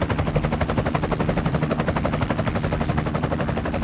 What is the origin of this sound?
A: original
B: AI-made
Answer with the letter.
A